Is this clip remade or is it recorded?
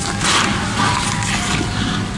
recorded